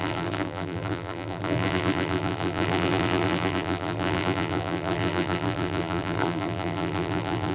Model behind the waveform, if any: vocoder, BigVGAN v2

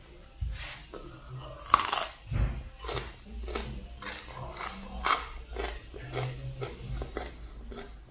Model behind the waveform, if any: none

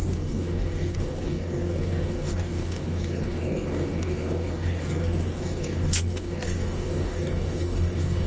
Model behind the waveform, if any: codec, DAC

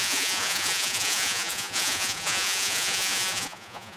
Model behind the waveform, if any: vocoder, Vocos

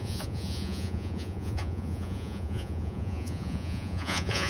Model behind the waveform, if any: vocoder, Vocos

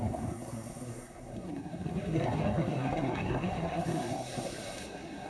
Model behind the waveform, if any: codec, SNAC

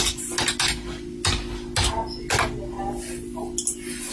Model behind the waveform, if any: none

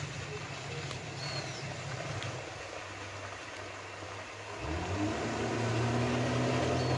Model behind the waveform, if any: none